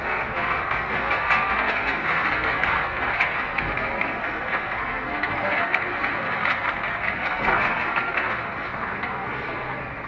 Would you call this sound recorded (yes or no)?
no